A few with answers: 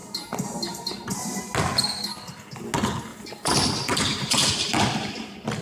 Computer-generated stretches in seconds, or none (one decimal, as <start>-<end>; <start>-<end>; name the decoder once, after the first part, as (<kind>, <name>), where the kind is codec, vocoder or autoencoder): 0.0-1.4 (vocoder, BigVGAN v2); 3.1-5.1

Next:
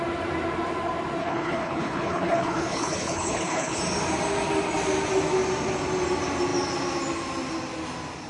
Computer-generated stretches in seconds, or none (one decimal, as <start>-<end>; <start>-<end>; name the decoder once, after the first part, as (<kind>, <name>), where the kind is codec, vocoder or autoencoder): 1.2-3.8 (codec, HILCodec)

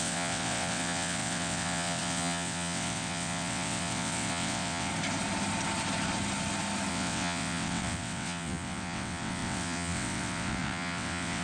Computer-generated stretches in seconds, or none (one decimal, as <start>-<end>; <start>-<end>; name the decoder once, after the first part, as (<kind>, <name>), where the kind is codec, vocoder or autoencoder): 0.0-4.9 (vocoder, WaveNeXt); 6.9-11.4

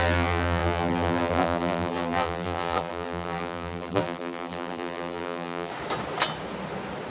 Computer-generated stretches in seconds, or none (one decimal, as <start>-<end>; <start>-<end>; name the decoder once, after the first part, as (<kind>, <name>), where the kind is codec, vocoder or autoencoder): 0.0-5.7 (vocoder, BigVGAN v2)

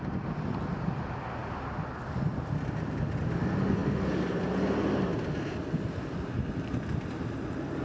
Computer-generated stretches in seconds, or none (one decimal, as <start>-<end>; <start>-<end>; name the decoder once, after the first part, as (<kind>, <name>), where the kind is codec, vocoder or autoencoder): none